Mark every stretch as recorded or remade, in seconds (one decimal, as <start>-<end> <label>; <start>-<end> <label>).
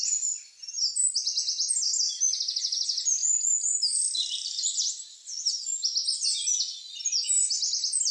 0.0-8.1 recorded